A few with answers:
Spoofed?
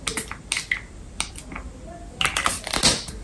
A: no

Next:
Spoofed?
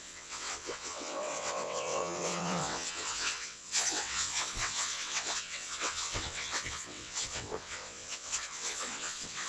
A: yes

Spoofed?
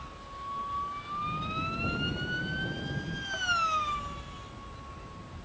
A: no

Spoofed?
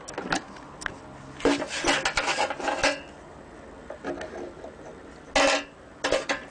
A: no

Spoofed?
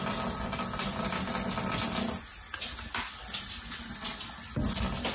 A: no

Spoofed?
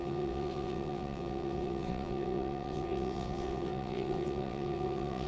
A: yes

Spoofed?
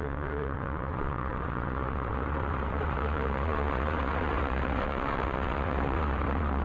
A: yes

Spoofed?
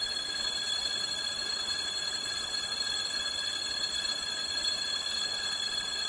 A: yes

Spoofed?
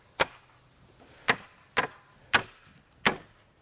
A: no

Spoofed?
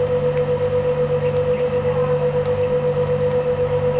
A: no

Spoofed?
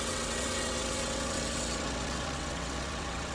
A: yes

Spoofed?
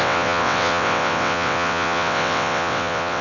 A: yes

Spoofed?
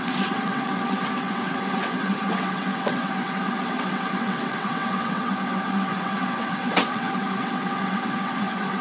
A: yes